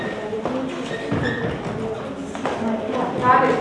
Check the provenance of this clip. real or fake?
real